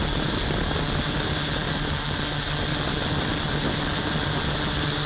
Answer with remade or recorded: recorded